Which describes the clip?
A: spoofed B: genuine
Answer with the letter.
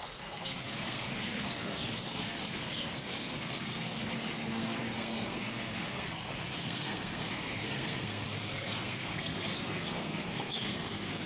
A